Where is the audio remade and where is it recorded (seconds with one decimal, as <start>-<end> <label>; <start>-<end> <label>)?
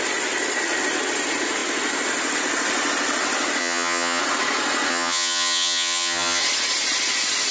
0.0-3.6 recorded; 3.6-4.2 remade; 4.2-4.9 recorded; 4.9-6.4 remade; 6.4-7.5 recorded